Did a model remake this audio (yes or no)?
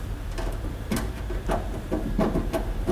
no